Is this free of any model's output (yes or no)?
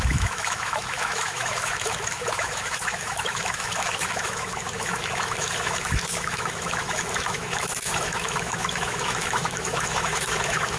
no